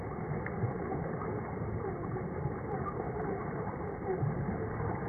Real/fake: real